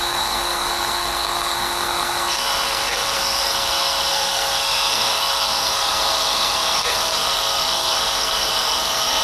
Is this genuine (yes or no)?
no